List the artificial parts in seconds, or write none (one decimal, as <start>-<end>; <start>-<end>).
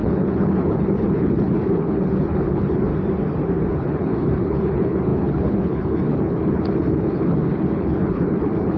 0.0-2.9; 3.7-8.8